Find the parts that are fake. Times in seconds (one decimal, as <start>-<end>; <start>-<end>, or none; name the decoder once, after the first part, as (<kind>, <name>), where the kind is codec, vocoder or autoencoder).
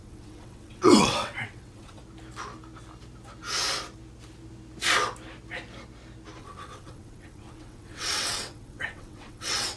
0.0-2.0 (vocoder, WaveNeXt); 6.4-9.8